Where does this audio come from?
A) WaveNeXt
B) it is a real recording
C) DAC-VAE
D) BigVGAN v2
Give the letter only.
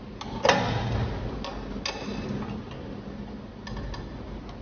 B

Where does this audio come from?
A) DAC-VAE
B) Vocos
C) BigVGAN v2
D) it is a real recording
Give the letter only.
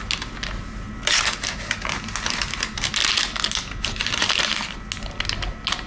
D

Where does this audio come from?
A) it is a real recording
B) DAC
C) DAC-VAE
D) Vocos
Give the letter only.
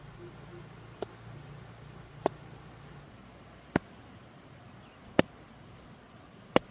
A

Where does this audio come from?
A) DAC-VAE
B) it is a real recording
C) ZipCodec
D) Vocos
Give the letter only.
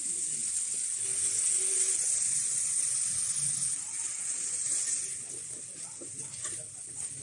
B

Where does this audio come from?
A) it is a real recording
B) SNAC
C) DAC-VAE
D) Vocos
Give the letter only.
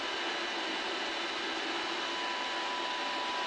A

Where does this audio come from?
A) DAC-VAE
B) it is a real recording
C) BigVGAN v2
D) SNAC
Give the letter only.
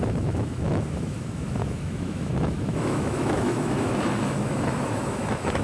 A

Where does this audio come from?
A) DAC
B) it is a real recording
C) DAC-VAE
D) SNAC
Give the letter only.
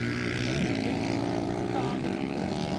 B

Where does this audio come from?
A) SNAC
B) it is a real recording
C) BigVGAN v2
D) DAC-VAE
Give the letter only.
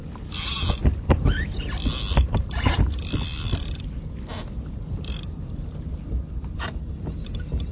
B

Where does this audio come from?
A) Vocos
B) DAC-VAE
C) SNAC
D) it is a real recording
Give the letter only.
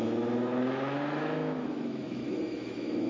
B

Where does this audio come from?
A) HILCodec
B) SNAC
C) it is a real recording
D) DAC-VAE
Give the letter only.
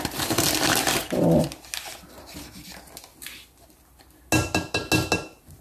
C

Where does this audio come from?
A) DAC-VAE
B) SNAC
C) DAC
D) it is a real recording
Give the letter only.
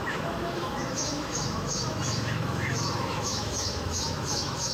A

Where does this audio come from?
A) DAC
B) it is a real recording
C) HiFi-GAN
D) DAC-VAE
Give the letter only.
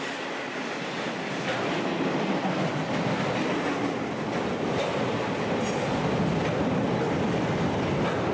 B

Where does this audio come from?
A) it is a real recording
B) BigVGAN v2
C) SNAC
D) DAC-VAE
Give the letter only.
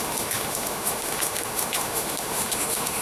D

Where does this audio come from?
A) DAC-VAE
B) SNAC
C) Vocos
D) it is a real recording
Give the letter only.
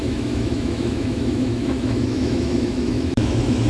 A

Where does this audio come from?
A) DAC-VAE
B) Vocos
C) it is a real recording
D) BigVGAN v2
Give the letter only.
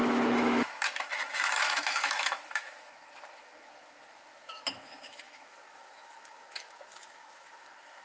A